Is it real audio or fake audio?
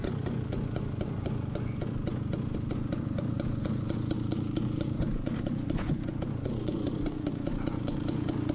fake